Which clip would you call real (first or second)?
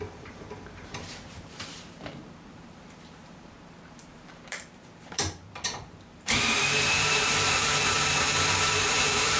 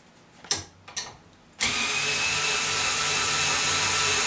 second